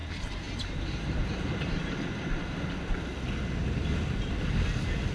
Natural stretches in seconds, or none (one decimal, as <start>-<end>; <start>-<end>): 0.0-5.1